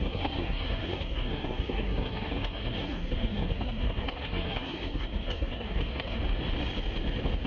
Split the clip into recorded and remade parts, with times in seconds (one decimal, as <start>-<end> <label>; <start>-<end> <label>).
0.0-6.2 remade; 6.2-7.5 recorded